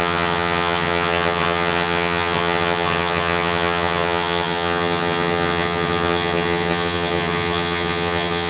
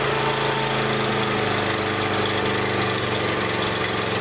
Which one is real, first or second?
second